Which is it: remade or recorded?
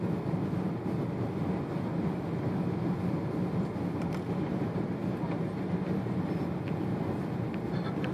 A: recorded